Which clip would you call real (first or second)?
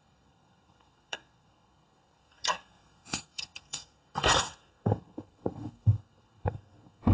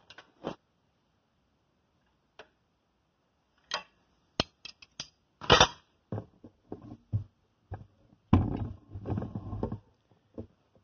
second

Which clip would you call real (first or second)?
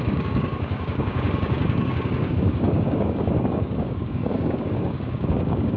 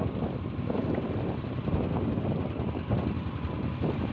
second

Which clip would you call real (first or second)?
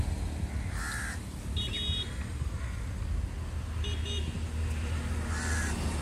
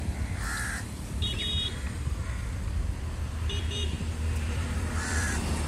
first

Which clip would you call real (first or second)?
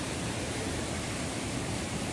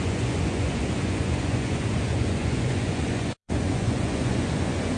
first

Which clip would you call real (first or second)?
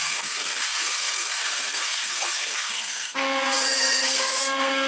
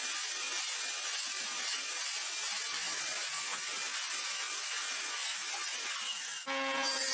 second